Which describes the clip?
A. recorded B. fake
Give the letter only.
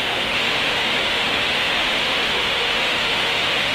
B